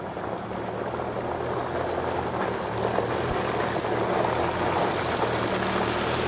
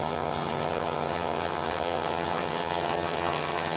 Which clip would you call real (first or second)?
first